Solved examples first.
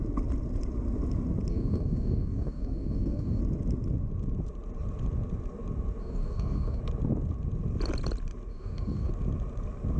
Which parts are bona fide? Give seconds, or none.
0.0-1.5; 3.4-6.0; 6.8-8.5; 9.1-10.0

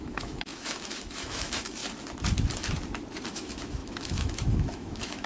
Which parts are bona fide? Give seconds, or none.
1.8-3.3

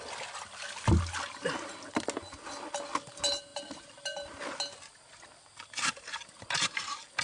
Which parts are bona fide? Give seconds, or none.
0.0-7.2